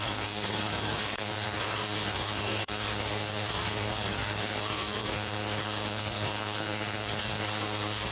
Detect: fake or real fake